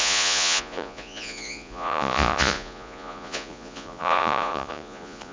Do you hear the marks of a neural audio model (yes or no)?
yes